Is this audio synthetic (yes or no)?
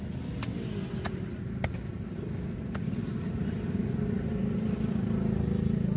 no